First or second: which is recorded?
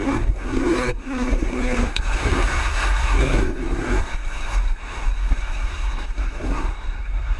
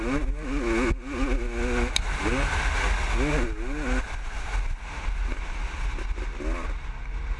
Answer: second